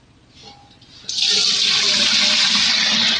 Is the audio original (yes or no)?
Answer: yes